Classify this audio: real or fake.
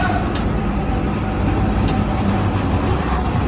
real